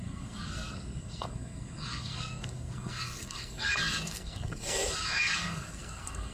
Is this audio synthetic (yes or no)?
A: yes